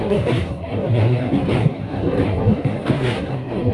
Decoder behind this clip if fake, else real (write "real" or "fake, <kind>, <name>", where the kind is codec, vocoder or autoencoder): fake, codec, SNAC